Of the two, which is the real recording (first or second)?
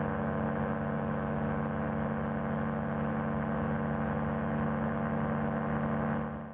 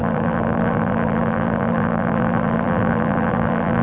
first